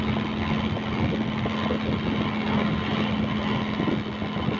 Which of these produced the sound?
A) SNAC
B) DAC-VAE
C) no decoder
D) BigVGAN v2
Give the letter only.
C